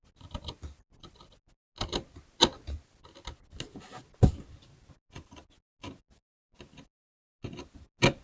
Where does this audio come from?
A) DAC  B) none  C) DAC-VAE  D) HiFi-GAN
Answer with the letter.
B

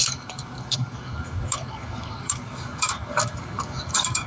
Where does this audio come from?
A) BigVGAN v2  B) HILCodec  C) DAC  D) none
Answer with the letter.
C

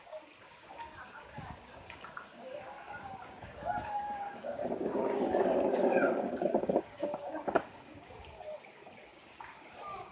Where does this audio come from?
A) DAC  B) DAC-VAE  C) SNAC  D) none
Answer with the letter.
A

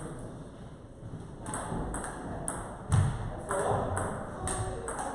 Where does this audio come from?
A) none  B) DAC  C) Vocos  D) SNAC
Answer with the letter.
A